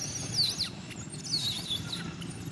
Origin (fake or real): real